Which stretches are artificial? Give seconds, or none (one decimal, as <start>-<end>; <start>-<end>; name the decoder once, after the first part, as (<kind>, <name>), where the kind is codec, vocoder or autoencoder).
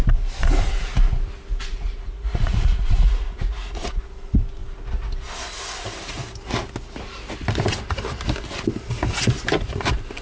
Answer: 1.7-4.0 (vocoder, Vocos)